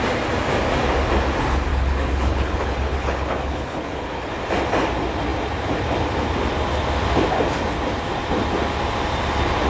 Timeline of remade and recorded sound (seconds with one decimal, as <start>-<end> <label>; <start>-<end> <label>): 0.0-1.7 recorded; 1.7-4.3 remade; 4.3-9.7 recorded